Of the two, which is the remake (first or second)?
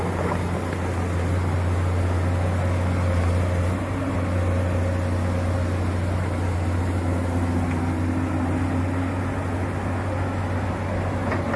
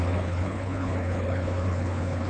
second